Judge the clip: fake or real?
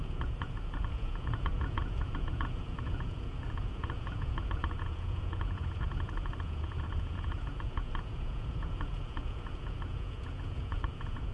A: fake